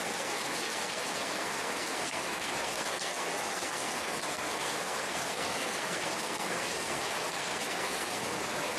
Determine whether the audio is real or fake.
fake